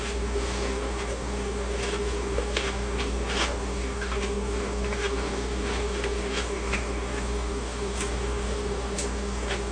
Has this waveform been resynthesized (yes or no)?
yes